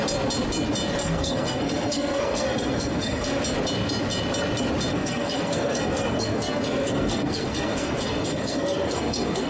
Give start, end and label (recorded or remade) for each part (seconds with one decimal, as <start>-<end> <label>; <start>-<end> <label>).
0.0-1.0 recorded; 1.0-3.4 remade; 3.4-4.9 recorded; 4.9-9.5 remade